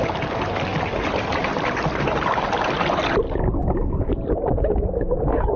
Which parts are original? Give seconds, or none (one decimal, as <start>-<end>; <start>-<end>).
0.0-5.6